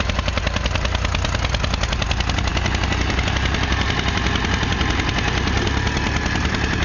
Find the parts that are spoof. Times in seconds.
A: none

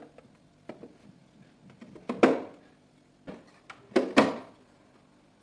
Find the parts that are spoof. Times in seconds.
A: none

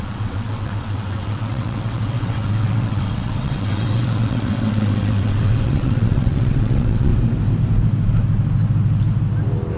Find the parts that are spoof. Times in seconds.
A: 0.0-7.1 (vocoder, WaveNeXt)